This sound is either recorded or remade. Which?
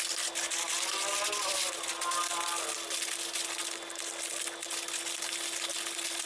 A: recorded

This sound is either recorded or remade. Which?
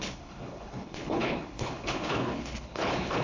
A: remade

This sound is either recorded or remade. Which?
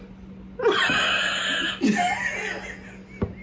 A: recorded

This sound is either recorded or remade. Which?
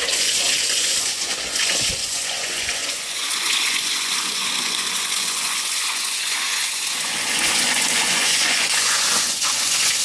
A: remade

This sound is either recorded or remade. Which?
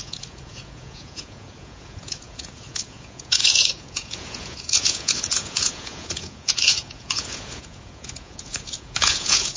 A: remade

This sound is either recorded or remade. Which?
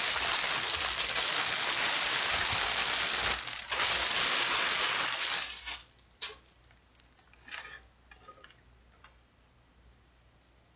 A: recorded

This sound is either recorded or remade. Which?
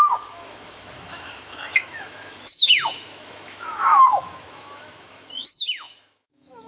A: remade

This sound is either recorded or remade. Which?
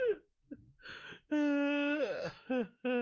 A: remade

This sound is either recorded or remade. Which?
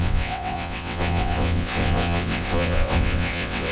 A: remade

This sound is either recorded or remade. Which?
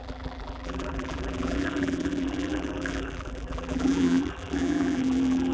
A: remade